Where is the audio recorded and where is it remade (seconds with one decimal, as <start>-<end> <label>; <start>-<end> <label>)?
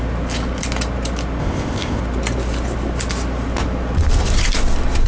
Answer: 0.0-1.4 recorded; 1.4-2.0 remade; 2.0-5.1 recorded